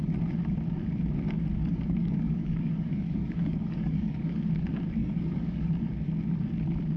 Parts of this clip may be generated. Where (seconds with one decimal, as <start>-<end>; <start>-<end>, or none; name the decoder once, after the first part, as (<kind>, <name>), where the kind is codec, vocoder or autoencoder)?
1.5-4.4 (codec, DAC); 5.0-5.7